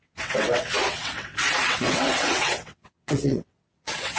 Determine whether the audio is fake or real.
fake